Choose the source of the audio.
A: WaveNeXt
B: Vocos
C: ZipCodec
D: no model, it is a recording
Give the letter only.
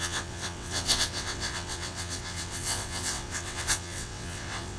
A